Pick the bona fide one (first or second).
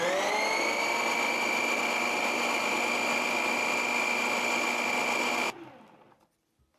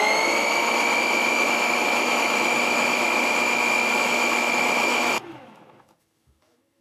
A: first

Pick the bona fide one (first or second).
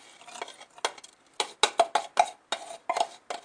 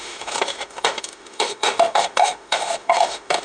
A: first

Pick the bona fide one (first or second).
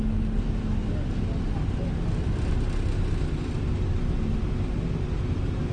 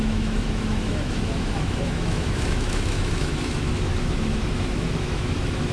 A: first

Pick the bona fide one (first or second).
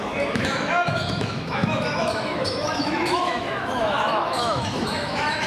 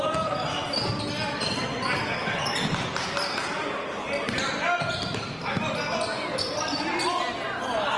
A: second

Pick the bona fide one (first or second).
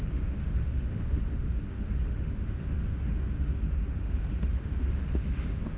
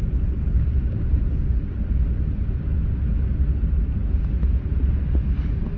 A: second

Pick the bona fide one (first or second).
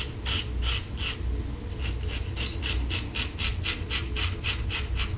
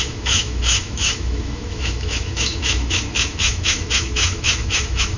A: first